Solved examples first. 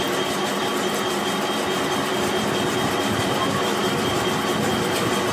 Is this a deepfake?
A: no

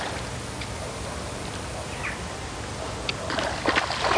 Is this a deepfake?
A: no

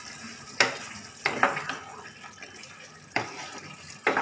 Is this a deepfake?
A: no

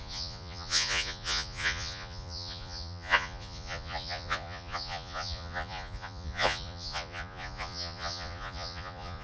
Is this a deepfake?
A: yes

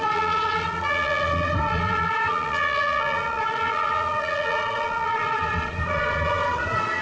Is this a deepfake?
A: yes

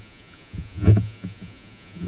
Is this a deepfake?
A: yes